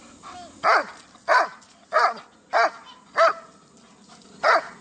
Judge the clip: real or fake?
real